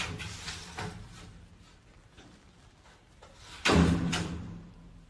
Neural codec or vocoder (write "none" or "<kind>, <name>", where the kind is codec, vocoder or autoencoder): vocoder, BigVGAN v2